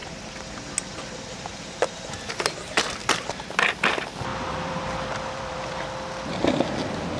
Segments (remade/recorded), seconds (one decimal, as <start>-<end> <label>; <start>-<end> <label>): 0.0-1.5 recorded; 1.5-2.6 remade; 2.6-4.3 recorded; 4.3-5.6 remade; 5.6-7.2 recorded